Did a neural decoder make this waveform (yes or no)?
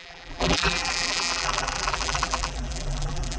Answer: yes